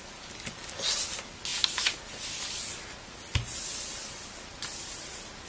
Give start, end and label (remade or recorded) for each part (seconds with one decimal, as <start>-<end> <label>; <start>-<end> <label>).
0.0-5.5 recorded

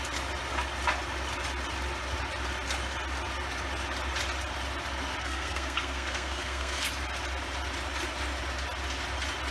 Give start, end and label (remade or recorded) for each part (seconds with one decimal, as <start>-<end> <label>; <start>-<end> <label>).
0.0-5.2 recorded; 5.2-6.9 remade; 6.9-9.5 recorded

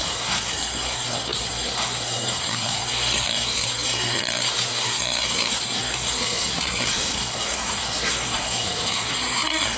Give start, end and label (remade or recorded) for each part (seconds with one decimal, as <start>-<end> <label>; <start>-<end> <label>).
0.0-9.8 remade